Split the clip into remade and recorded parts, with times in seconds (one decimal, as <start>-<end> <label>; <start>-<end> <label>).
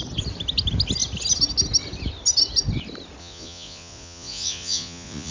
0.0-3.2 recorded; 3.2-5.3 remade